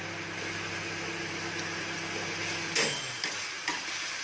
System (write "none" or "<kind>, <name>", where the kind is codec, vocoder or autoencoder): none